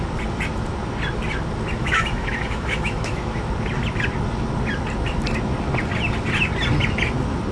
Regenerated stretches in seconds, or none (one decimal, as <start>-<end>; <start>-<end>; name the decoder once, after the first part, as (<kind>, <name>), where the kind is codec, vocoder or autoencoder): 1.8-3.4 (autoencoder, DAC-VAE)